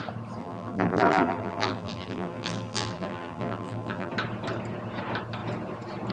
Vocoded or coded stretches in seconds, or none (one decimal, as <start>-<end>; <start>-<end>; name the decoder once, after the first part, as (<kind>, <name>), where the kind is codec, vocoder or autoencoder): 0.4-4.1 (vocoder, BigVGAN v2)